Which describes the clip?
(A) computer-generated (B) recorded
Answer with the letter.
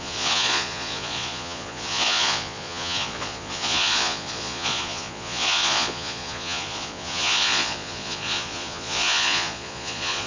A